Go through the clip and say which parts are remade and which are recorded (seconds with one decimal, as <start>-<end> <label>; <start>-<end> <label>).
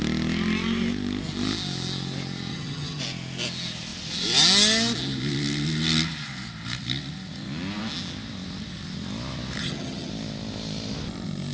0.0-2.5 recorded; 2.5-3.0 remade; 3.0-9.6 recorded; 9.6-10.1 remade; 10.1-11.5 recorded